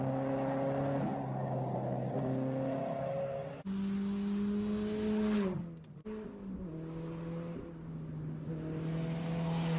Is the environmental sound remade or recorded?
recorded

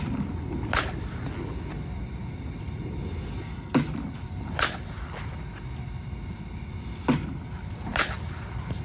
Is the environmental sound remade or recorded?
recorded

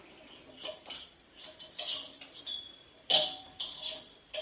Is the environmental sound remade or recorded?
remade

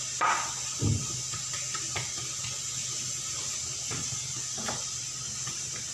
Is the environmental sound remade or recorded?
recorded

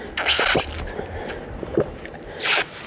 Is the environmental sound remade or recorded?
recorded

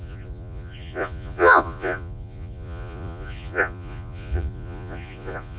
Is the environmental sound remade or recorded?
remade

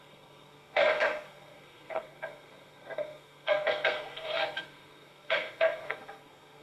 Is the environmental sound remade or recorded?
remade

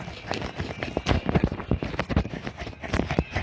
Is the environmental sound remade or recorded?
recorded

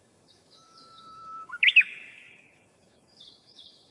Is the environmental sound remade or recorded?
remade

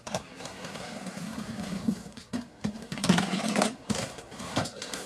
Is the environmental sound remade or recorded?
remade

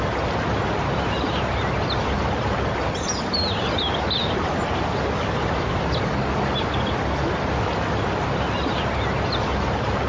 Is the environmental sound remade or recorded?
recorded